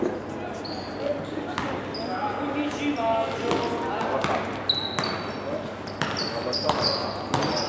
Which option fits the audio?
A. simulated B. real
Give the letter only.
B